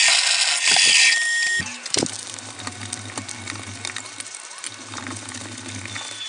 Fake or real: real